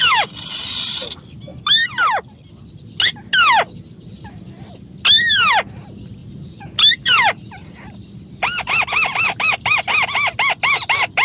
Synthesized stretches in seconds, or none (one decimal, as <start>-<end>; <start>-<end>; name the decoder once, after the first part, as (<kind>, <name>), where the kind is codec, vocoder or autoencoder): none